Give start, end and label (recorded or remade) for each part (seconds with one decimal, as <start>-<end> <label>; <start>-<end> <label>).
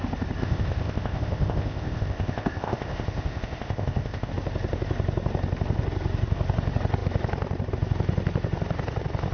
0.0-0.4 recorded; 0.4-4.3 remade; 4.3-9.3 recorded